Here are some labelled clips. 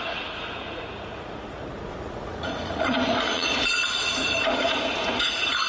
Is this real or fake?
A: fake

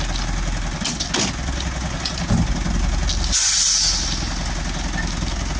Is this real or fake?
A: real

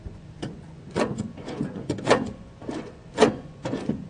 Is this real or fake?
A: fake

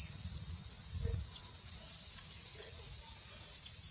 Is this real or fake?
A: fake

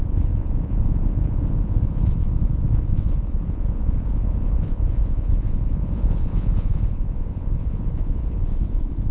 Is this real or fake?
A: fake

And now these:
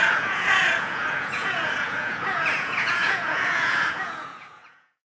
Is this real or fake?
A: fake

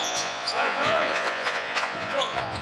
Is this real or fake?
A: fake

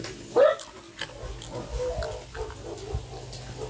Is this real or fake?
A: real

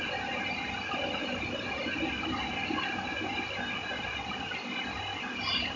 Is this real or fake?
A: real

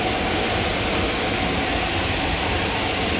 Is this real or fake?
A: real